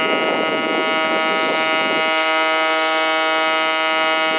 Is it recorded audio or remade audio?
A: recorded